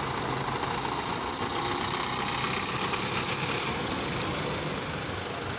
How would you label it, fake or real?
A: real